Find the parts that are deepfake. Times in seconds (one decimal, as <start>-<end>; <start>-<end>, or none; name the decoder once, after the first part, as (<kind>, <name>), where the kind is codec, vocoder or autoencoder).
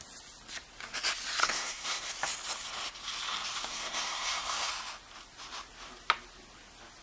1.4-2.1 (codec, SNAC); 3.7-4.7